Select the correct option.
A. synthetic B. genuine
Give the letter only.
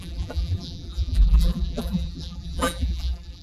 A